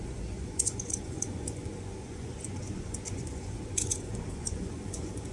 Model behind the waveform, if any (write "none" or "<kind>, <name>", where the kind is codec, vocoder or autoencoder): vocoder, Vocos